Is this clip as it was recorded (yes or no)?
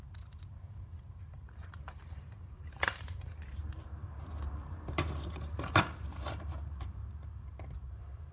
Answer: no